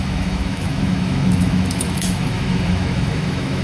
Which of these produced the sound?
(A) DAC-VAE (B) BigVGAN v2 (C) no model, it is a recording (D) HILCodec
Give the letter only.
A